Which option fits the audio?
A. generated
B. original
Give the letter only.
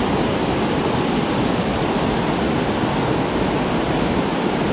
B